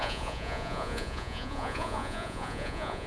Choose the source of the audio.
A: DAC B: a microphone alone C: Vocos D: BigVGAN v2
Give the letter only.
C